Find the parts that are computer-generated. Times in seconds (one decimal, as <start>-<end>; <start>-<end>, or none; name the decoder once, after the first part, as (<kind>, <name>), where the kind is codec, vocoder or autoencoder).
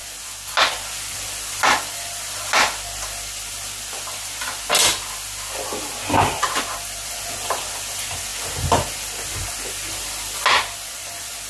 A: none